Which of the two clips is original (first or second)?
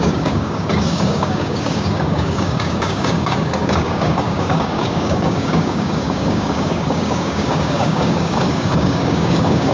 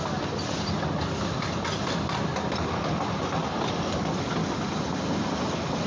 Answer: second